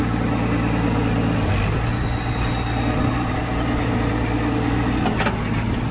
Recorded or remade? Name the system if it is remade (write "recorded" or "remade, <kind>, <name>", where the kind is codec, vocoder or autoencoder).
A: recorded